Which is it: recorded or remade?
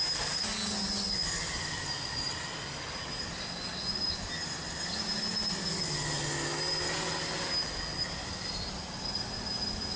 recorded